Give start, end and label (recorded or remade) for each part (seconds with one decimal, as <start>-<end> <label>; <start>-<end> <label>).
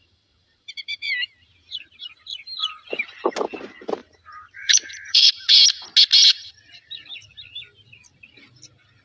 0.0-0.4 recorded; 0.4-2.9 remade; 2.9-4.0 recorded; 4.0-5.3 remade; 5.3-9.0 recorded